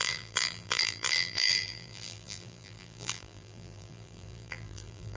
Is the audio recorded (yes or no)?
no